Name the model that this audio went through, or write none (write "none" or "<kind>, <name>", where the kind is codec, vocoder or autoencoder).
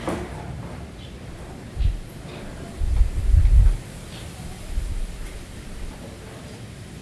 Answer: none